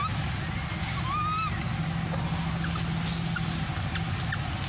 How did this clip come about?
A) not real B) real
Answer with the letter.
B